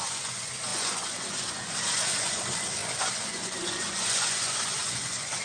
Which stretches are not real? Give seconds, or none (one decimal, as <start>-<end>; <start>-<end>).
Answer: 0.0-5.4